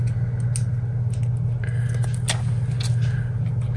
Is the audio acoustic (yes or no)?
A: yes